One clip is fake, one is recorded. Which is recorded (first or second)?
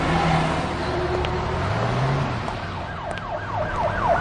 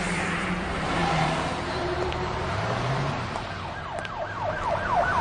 first